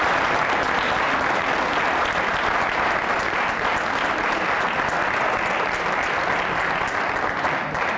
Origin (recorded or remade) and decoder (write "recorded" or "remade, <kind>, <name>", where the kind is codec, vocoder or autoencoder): recorded